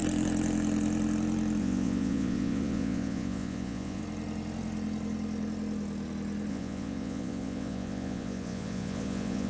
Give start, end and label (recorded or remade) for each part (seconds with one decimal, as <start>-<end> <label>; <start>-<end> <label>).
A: 0.0-1.6 recorded; 1.6-4.0 remade; 4.0-6.5 recorded; 6.5-9.5 remade